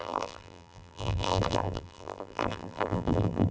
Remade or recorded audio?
remade